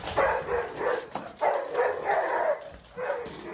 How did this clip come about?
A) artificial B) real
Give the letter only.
B